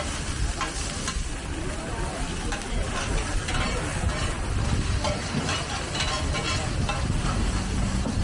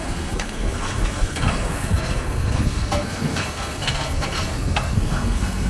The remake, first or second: second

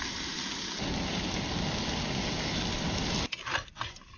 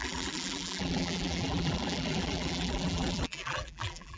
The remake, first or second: second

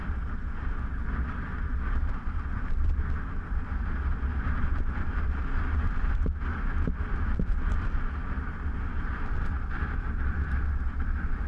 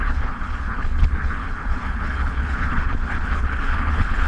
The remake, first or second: second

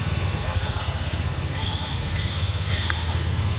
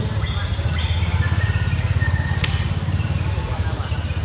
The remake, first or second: first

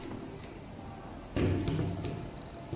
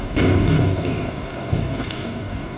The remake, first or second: second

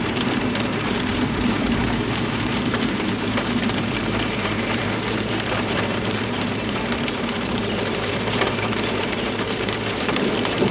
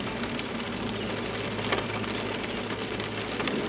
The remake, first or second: first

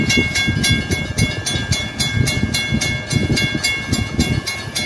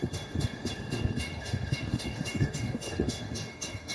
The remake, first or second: second